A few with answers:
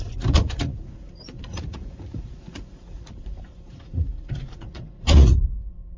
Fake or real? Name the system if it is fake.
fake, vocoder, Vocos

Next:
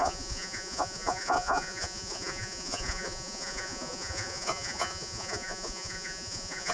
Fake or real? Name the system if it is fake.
fake, vocoder, Vocos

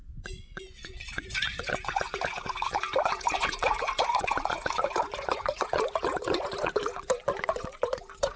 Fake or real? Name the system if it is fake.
fake, vocoder, Vocos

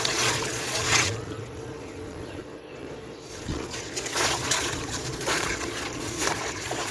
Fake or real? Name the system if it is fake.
fake, vocoder, Vocos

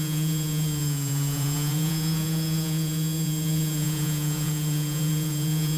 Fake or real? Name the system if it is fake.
fake, vocoder, Vocos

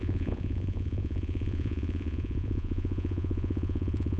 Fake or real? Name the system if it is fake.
fake, vocoder, Vocos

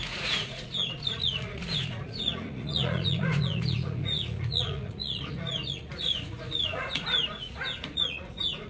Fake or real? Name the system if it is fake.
fake, vocoder, Vocos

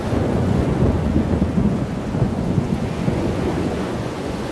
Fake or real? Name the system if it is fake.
fake, vocoder, Vocos